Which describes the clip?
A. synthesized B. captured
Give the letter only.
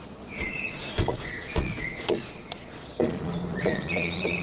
A